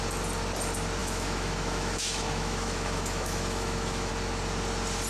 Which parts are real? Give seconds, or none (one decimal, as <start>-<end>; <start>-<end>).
0.0-1.0; 4.1-5.1